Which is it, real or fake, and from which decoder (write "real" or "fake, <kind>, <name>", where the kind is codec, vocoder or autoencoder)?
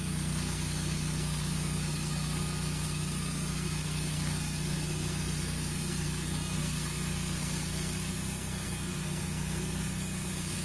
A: fake, codec, SNAC